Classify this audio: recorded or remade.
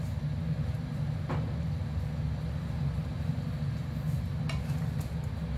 recorded